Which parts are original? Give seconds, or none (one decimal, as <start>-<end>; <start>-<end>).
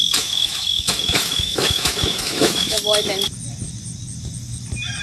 2.8-5.0